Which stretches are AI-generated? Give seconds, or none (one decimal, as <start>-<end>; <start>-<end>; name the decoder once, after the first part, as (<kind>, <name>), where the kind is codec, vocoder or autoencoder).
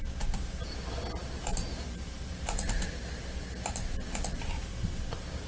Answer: none